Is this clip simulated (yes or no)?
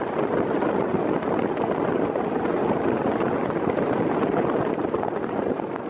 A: no